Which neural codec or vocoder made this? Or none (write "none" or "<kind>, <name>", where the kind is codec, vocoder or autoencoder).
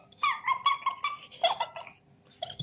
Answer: none